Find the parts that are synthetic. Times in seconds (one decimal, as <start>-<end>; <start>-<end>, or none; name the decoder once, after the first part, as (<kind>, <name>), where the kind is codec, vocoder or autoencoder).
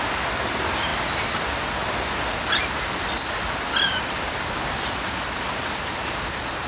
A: none